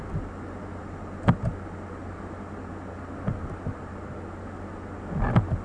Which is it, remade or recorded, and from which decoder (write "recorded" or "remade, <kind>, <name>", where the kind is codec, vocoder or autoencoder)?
recorded